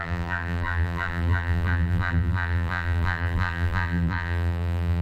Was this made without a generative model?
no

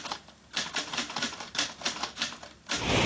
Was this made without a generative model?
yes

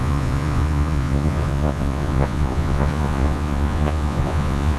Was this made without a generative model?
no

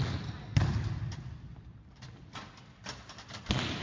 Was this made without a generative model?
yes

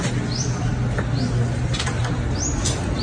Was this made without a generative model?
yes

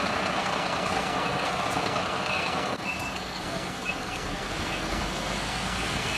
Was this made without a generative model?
no